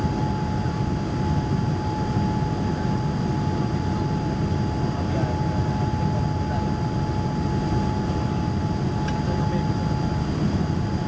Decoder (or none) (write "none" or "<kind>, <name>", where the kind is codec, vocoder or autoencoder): none